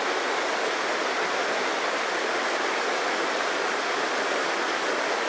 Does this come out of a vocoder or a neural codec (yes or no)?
no